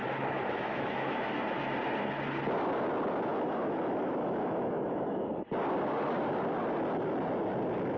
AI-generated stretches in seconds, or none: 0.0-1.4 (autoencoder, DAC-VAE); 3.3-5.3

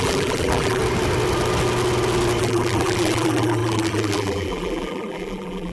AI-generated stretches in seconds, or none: 0.0-0.8 (vocoder, BigVGAN v2); 2.4-5.7

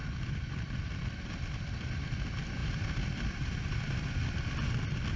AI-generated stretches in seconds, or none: none

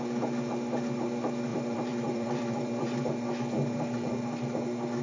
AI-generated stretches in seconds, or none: 1.5-3.1 (vocoder, BigVGAN v2)